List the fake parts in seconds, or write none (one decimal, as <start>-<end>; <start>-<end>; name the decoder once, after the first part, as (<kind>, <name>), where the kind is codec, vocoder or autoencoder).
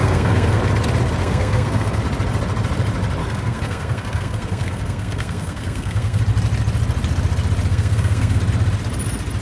0.0-0.6 (codec, SNAC); 1.2-2.0; 3.2-6.2; 7.7-8.4